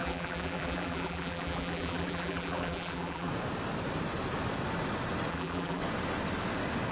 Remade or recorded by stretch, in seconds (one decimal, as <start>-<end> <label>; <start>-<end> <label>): 0.0-3.3 remade; 3.3-5.3 recorded; 5.3-5.8 remade; 5.8-6.9 recorded